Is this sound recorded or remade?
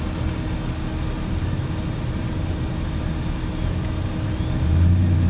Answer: recorded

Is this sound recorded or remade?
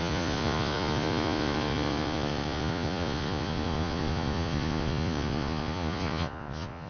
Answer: remade